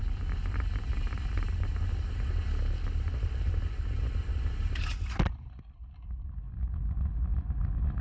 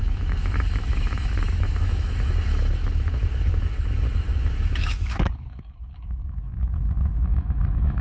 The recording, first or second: first